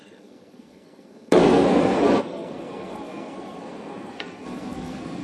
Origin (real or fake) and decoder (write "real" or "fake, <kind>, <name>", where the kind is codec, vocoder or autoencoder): fake, codec, SNAC